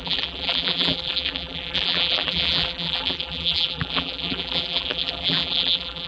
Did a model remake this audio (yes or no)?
yes